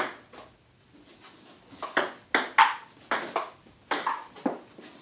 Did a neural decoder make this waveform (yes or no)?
no